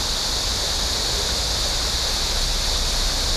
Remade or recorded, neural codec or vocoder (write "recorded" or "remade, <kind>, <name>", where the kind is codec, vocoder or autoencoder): recorded